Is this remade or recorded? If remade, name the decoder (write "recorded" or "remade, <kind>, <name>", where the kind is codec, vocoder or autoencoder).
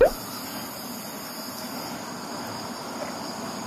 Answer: recorded